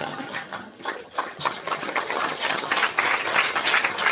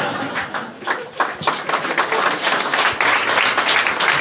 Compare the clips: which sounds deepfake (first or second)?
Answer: first